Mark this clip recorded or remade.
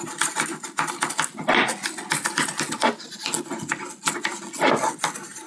recorded